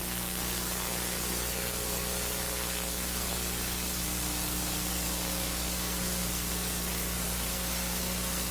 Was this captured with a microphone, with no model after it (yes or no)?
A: no